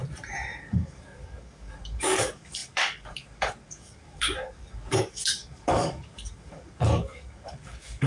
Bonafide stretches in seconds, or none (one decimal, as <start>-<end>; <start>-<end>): 0.0-0.6

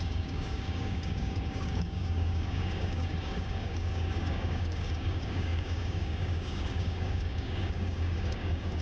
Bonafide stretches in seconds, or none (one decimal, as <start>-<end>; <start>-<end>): none

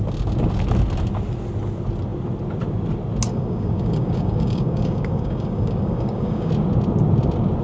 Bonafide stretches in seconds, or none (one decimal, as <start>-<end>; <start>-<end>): 0.0-3.3; 6.5-7.6

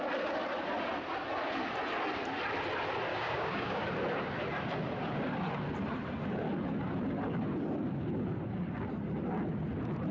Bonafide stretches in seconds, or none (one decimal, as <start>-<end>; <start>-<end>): 0.0-3.1; 3.8-10.1

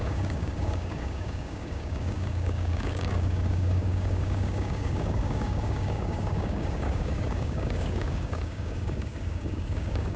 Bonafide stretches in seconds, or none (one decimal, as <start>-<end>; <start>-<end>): none

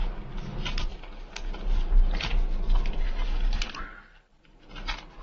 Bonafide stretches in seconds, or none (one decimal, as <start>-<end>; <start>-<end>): 0.0-5.2

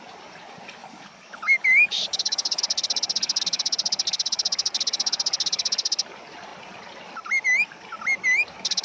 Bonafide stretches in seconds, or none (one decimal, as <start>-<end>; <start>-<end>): 0.0-0.8; 2.6-8.8